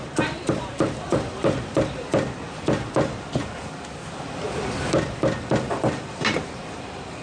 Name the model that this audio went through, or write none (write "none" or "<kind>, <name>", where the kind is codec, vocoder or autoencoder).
vocoder, BigVGAN v2